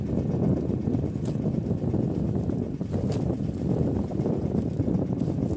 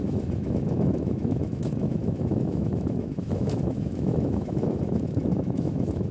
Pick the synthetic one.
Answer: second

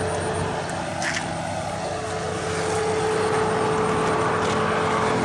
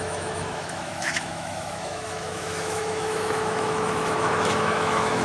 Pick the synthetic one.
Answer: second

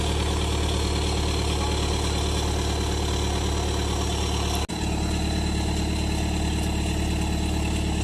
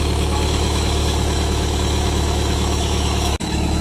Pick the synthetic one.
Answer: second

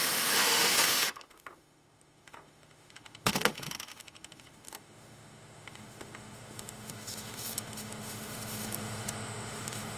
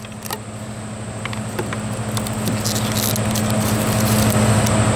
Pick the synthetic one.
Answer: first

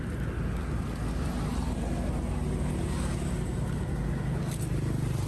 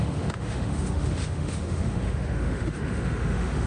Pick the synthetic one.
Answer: second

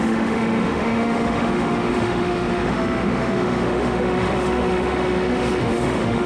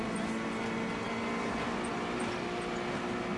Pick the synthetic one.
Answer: first